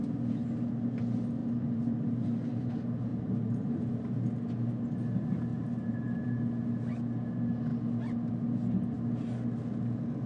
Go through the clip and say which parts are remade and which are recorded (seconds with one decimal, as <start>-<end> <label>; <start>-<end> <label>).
0.0-1.4 recorded; 1.4-2.7 remade; 2.7-3.1 recorded; 3.1-3.9 remade; 3.9-5.5 recorded; 5.5-6.4 remade; 6.4-10.3 recorded